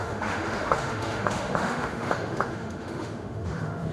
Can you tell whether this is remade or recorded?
remade